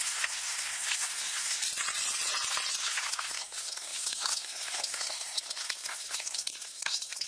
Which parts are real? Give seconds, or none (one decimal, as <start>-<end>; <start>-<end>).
1.6-2.8